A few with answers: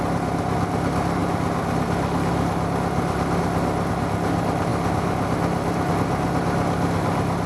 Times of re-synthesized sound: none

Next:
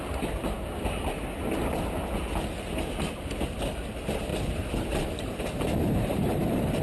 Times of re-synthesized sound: 4.3-6.8

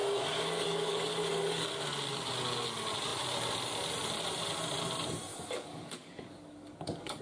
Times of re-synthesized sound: 0.0-1.7; 5.3-7.2

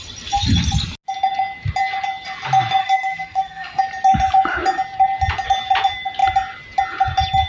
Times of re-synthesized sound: 2.8-3.8